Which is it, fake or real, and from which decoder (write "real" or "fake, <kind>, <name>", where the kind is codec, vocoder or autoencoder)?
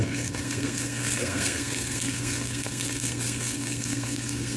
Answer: fake, codec, SNAC